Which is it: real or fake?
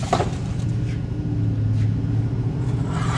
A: real